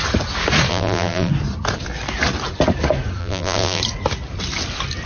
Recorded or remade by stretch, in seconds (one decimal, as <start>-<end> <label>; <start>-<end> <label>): 0.0-0.7 recorded; 0.7-1.3 remade; 1.3-3.2 recorded; 3.2-3.8 remade; 3.8-5.1 recorded